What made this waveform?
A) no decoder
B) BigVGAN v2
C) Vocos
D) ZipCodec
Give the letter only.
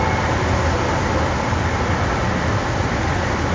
A